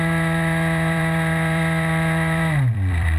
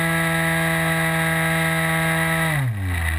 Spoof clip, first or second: first